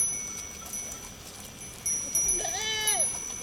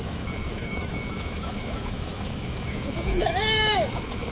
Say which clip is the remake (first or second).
second